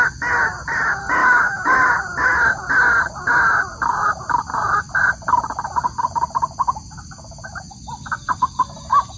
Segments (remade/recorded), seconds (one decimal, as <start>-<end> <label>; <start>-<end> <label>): 0.0-1.2 recorded; 1.2-1.9 remade; 1.9-9.2 recorded